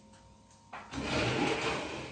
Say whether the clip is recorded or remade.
recorded